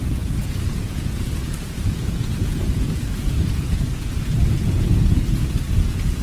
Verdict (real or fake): fake